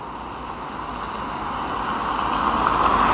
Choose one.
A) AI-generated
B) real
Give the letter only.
B